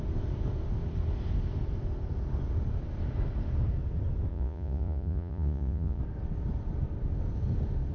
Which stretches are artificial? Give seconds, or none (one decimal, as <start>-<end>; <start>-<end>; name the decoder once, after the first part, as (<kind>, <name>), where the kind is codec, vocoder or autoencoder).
4.3-6.0 (vocoder, Vocos)